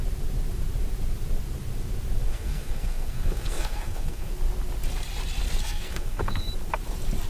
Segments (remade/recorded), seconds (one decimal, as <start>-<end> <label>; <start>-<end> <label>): 0.0-2.3 recorded; 2.3-4.3 remade; 4.3-5.6 recorded; 5.6-6.5 remade; 6.5-7.3 recorded